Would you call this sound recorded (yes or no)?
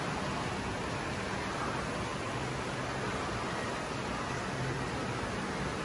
yes